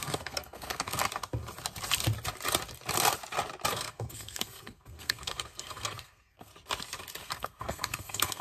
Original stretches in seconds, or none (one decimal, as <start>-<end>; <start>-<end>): 1.0-3.7; 6.5-7.2